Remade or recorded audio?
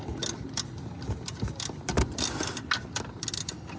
recorded